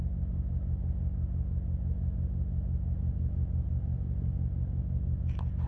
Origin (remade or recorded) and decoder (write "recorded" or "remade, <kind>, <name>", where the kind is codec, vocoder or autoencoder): recorded